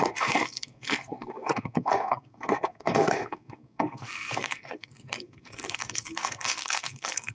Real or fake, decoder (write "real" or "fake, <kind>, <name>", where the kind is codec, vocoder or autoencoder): fake, codec, SNAC